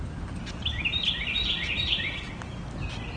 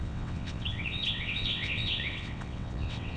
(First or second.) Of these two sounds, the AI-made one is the second